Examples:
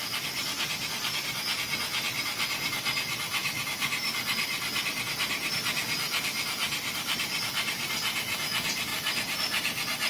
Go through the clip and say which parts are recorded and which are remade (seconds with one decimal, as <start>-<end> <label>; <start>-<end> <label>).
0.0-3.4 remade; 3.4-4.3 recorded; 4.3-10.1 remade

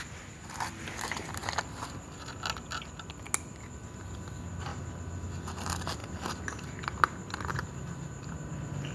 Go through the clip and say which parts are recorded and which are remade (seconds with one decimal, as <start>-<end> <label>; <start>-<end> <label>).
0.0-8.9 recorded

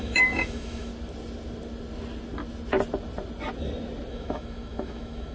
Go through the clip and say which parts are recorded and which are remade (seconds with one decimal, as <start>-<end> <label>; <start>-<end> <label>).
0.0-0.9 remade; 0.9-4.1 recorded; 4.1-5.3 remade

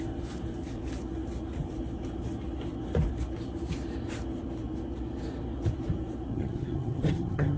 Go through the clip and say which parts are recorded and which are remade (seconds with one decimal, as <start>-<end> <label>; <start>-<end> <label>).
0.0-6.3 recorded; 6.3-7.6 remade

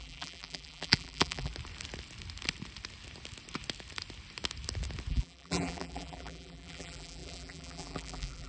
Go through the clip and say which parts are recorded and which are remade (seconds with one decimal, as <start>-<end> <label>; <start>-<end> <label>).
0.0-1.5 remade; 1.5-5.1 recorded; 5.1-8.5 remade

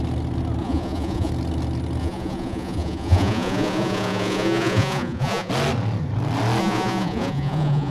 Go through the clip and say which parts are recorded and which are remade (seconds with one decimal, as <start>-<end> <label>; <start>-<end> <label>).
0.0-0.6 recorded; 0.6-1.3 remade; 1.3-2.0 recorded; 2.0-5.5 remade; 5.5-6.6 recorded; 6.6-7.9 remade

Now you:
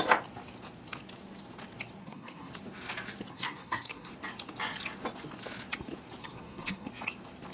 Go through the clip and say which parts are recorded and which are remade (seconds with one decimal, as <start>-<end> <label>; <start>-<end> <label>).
0.0-2.0 recorded; 2.0-2.5 remade; 2.5-3.3 recorded; 3.3-4.1 remade; 4.1-6.2 recorded; 6.2-6.9 remade; 6.9-7.5 recorded